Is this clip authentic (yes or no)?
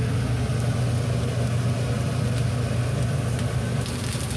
yes